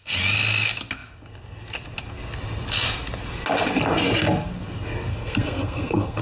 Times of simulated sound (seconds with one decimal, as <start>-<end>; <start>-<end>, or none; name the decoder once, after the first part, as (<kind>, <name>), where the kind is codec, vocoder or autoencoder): 5.1-6.2 (codec, SNAC)